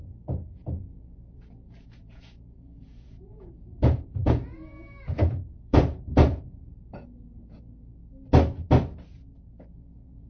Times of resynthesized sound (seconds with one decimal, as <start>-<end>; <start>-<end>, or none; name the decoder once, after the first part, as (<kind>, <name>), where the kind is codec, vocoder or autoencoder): 0.0-8.0 (vocoder, Vocos); 9.7-10.3